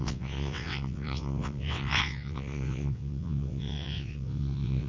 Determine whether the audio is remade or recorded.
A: remade